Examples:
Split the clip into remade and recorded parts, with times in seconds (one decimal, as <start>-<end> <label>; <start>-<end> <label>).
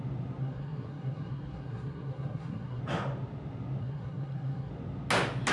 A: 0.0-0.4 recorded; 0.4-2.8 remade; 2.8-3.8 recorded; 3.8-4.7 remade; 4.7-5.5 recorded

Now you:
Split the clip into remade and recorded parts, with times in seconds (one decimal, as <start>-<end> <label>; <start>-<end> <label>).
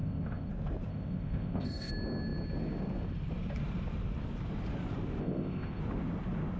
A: 0.0-0.5 remade; 0.5-0.9 recorded; 0.9-1.9 remade; 1.9-5.2 recorded; 5.2-5.8 remade; 5.8-6.6 recorded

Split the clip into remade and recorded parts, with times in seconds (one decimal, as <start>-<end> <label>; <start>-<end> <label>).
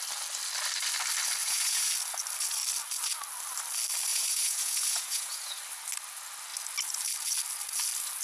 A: 0.0-1.4 recorded; 1.4-1.9 remade; 1.9-4.1 recorded; 4.1-5.6 remade; 5.6-8.2 recorded